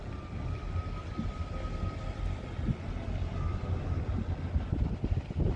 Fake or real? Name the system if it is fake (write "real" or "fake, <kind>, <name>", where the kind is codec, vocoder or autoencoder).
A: real